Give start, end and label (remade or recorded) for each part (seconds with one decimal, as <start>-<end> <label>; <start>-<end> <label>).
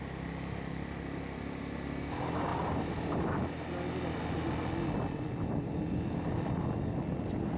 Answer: 0.0-7.6 recorded